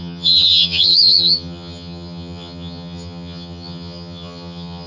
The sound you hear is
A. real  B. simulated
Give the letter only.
B